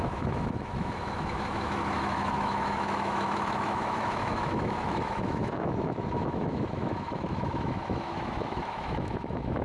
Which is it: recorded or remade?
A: remade